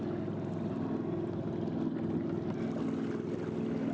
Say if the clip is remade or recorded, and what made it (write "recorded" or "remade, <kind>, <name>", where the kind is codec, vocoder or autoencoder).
recorded